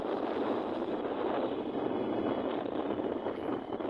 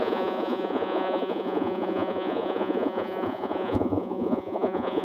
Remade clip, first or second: second